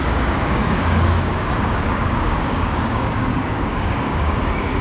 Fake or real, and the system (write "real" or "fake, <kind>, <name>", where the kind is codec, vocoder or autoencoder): fake, codec, DAC